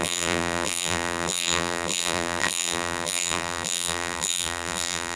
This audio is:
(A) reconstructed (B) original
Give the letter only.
A